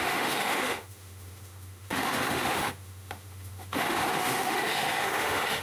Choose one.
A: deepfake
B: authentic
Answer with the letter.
A